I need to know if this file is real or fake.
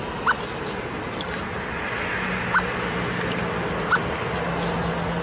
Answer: real